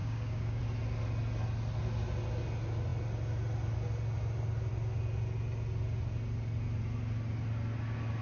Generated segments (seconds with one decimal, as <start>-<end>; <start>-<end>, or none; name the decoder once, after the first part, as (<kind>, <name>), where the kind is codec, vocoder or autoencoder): 0.0-0.6 (codec, DAC)